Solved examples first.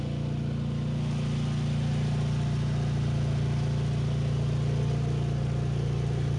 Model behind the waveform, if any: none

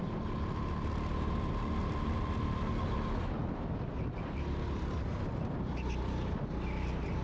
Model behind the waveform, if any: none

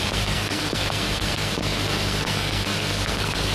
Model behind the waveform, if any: codec, SNAC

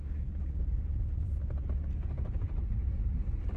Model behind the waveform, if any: none